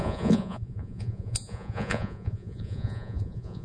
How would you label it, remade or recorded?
remade